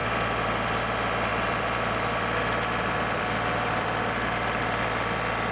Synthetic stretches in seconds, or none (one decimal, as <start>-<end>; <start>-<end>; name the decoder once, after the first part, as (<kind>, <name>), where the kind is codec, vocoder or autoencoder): 0.0-0.8 (vocoder, BigVGAN v2); 1.3-4.6